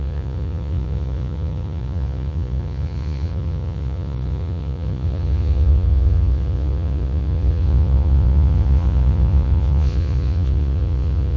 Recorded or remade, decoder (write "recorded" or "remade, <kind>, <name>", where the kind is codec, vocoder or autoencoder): remade, vocoder, Vocos